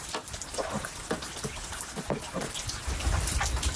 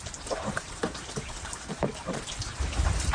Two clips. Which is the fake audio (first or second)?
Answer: second